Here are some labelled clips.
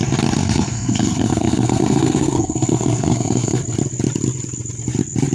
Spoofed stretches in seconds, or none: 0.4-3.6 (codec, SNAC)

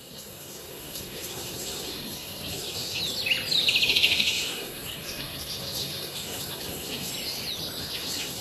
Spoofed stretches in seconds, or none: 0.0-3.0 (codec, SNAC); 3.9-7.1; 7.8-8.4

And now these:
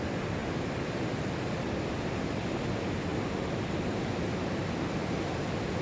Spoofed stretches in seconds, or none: none